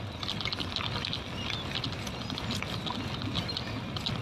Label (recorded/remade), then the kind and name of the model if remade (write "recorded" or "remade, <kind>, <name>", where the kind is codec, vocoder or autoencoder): recorded